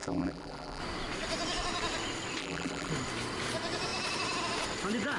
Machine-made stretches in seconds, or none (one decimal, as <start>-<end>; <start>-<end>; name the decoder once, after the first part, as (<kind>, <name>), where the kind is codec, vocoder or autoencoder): 0.0-0.8 (vocoder, BigVGAN v2); 2.4-2.9